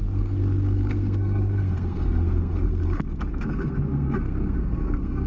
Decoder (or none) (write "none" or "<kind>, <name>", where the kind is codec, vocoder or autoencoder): codec, SNAC